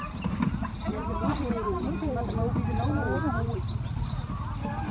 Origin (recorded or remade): remade